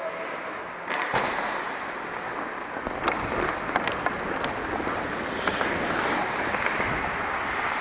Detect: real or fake real